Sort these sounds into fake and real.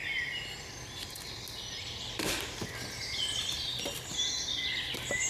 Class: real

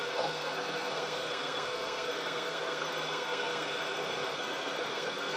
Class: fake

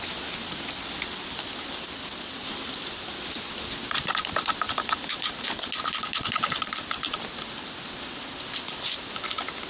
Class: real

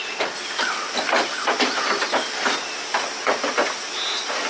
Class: real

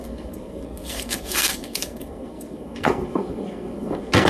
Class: fake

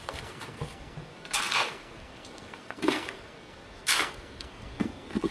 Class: fake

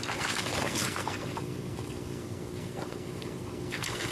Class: fake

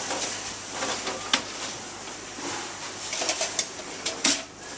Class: real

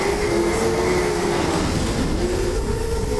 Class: fake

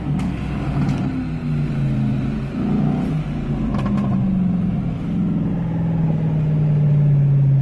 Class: real